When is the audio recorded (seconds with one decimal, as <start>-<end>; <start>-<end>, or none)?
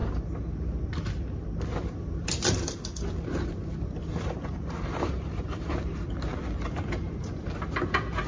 0.0-4.0; 5.0-8.3